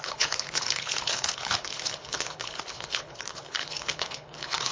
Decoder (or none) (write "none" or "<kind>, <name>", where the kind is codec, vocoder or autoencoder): codec, HILCodec